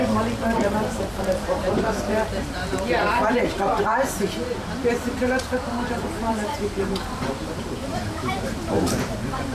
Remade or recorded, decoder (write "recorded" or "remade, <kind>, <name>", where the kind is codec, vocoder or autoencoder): remade, vocoder, BigVGAN v2